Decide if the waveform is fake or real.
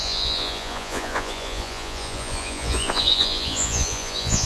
fake